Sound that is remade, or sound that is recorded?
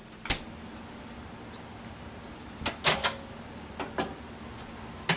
recorded